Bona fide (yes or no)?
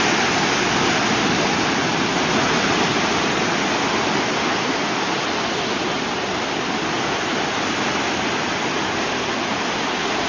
yes